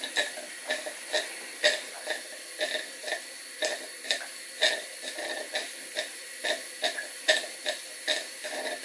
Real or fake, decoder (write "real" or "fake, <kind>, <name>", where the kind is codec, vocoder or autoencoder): real